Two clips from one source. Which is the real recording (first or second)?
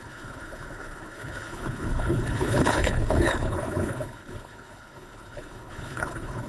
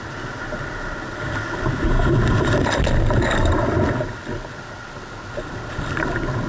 second